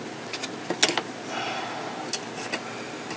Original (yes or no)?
yes